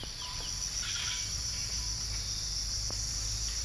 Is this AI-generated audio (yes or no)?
no